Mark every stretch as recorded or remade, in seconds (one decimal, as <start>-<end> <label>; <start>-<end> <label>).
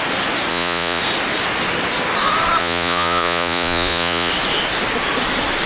0.0-0.5 recorded; 0.5-1.0 remade; 1.0-2.6 recorded; 2.6-4.3 remade; 4.3-5.7 recorded